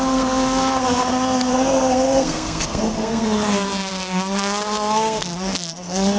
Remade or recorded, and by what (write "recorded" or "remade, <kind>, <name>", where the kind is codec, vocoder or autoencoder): remade, codec, SNAC